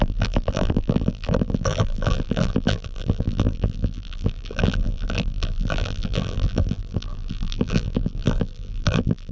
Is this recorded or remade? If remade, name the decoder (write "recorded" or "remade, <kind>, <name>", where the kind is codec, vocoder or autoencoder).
remade, vocoder, BigVGAN v2